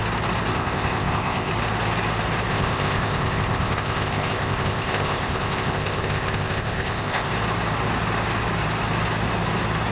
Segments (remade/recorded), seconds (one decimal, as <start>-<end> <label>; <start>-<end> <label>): 0.0-0.5 recorded; 0.5-1.5 remade; 1.5-2.5 recorded; 2.5-7.3 remade; 7.3-9.9 recorded